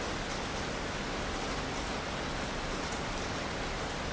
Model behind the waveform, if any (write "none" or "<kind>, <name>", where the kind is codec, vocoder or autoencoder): none